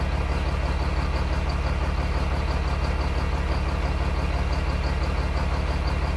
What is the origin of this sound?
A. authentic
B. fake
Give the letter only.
A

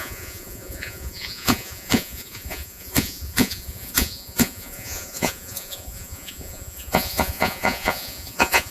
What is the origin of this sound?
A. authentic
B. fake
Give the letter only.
B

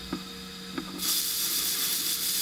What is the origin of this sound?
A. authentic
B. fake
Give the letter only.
A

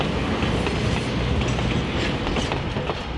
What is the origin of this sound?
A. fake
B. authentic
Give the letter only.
B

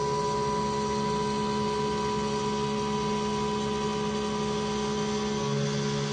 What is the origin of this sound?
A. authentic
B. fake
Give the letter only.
A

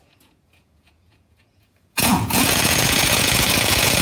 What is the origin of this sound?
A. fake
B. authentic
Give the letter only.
A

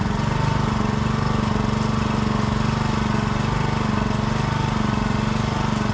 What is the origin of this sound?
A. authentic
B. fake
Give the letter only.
A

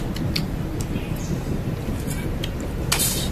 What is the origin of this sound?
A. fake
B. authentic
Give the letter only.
B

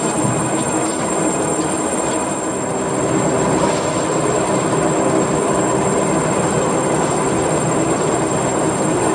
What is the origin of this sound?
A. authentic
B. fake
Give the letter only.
A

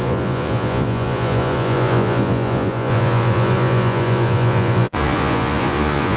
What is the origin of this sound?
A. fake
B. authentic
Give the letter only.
A